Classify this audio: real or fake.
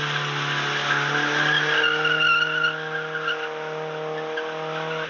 real